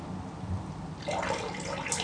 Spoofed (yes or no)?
no